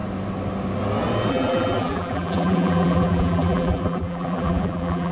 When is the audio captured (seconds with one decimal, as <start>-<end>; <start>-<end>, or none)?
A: 0.0-1.3